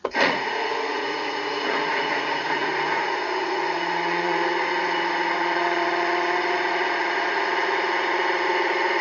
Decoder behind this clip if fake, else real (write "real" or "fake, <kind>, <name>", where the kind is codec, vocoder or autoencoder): fake, vocoder, Vocos